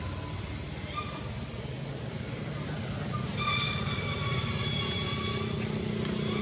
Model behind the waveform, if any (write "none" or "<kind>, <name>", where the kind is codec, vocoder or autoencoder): none